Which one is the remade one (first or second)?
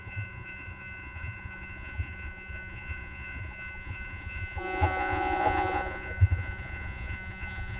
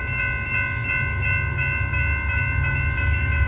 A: first